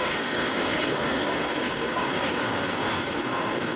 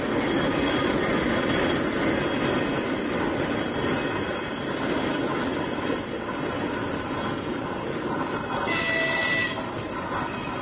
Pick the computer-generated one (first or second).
first